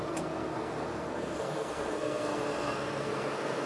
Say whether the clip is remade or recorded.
remade